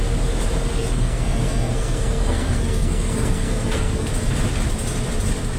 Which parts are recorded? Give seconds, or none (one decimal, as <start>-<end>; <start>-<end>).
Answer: 0.0-0.7; 4.1-5.6